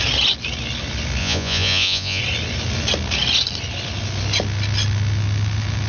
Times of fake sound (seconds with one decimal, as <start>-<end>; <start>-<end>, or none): 1.2-2.2